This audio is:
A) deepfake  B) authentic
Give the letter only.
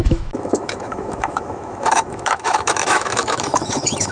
A